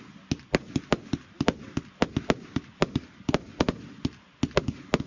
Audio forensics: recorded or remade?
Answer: recorded